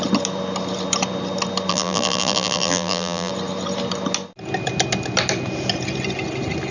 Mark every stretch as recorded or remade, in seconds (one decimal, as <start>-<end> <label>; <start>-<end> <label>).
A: 0.0-1.7 recorded; 1.7-3.3 remade; 3.3-6.7 recorded